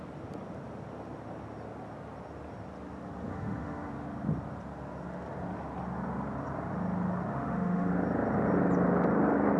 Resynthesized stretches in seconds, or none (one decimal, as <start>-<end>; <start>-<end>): 3.3-3.9; 7.3-7.9